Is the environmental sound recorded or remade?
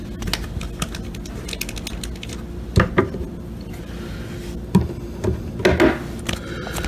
recorded